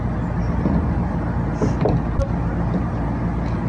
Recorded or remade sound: recorded